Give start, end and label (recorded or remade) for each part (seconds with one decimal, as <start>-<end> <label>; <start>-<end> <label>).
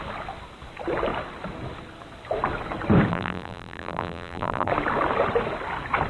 0.0-3.1 recorded; 3.1-4.7 remade; 4.7-6.1 recorded